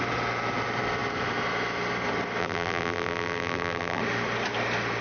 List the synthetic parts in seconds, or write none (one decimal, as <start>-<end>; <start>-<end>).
2.4-4.0

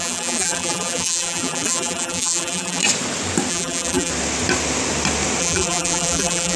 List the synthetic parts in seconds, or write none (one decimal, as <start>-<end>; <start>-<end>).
0.0-2.8; 3.5-4.1; 5.4-6.6

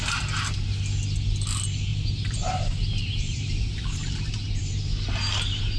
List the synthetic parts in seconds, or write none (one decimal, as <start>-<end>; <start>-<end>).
1.9-4.8

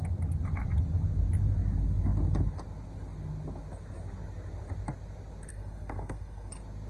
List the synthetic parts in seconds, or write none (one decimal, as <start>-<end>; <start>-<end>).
5.5-6.5

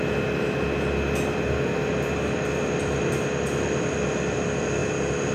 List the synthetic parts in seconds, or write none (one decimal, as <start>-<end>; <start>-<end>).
none